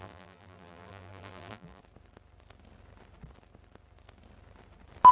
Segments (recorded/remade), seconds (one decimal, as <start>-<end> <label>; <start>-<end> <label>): 0.0-1.8 remade; 1.8-5.1 recorded